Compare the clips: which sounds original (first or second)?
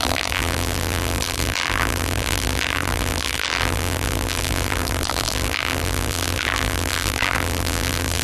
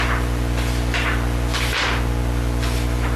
second